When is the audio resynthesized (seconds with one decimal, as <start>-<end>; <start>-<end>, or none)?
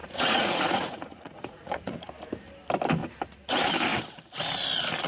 0.0-2.1